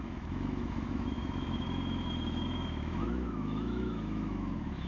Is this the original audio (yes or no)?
no